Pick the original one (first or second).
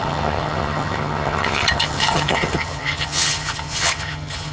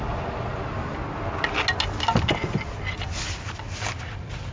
second